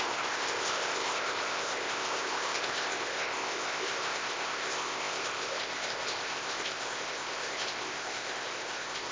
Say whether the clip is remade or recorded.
remade